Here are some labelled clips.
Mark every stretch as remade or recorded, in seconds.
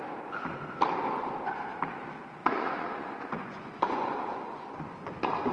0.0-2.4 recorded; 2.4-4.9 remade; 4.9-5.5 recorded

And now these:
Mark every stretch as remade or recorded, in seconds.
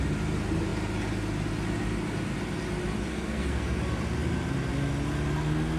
0.0-3.1 recorded; 3.1-3.8 remade; 3.8-5.8 recorded